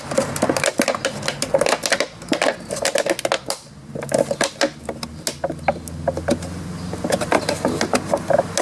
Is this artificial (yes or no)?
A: no